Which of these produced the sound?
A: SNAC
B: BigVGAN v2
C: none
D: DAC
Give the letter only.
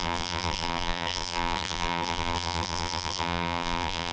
B